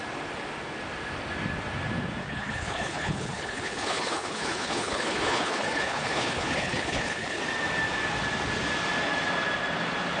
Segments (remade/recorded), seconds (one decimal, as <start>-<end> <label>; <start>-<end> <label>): 0.0-2.2 recorded; 2.2-7.4 remade; 7.4-10.2 recorded